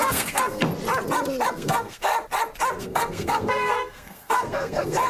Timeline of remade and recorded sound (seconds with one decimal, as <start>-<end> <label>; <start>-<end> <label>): 0.0-0.7 remade; 0.7-1.5 recorded; 1.5-2.1 remade; 2.1-2.8 recorded; 2.8-5.1 remade